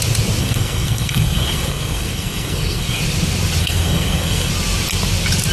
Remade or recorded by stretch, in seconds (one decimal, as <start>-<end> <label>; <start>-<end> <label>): 0.0-0.4 recorded; 0.4-3.0 remade; 3.0-3.6 recorded; 3.6-4.5 remade; 4.5-5.5 recorded